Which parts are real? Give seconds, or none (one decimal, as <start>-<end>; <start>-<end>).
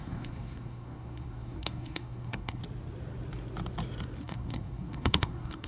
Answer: 2.6-4.2